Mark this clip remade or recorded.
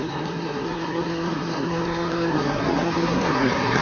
remade